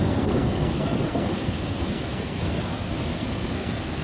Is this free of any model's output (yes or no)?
no